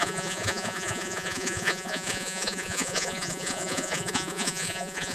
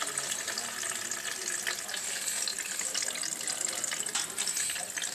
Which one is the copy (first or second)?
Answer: first